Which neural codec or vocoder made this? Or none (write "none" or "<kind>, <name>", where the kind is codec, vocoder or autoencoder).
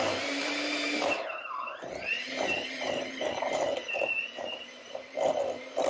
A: vocoder, BigVGAN v2